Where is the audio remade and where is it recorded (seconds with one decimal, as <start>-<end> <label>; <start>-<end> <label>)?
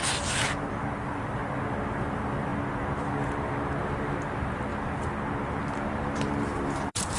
0.0-1.0 recorded; 1.0-1.4 remade; 1.4-2.0 recorded; 2.0-2.5 remade; 2.5-3.8 recorded; 3.8-4.7 remade; 4.7-5.5 recorded; 5.5-7.2 remade